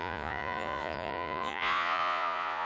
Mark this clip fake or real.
fake